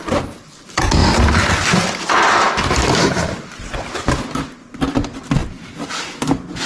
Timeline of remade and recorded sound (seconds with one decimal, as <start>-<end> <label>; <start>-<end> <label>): 0.0-1.0 recorded; 1.0-4.1 remade; 4.1-5.4 recorded; 5.4-6.0 remade; 6.0-6.7 recorded